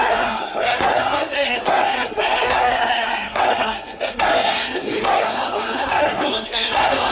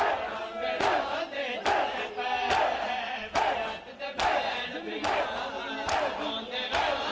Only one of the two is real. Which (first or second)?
second